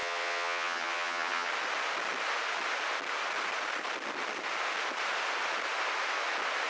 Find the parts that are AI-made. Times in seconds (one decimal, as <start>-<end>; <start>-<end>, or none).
0.0-1.5